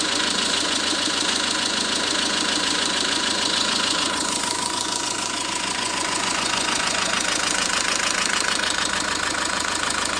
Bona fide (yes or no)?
no